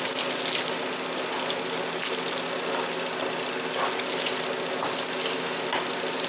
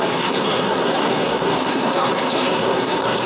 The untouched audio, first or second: first